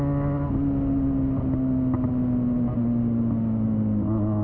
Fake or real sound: real